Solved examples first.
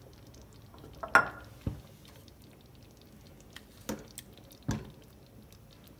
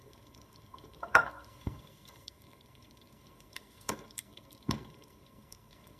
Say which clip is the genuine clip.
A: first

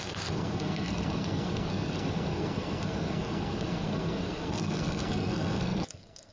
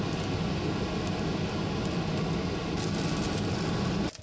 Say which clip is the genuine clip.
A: second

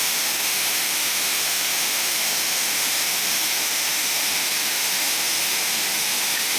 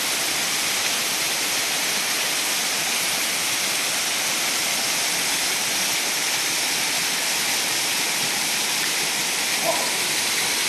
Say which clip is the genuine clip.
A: second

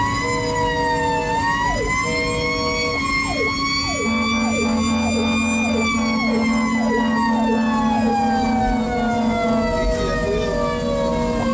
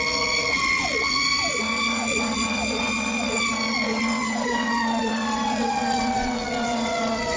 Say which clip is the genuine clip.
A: first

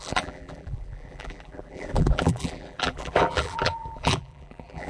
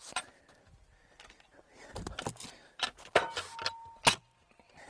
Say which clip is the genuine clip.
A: second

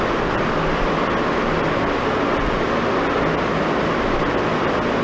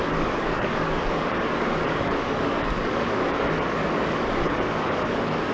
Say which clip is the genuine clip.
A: first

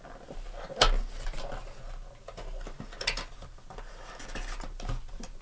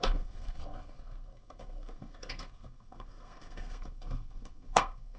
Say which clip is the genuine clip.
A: first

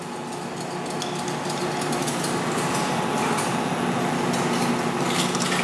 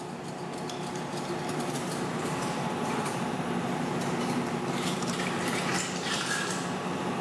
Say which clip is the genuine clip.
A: first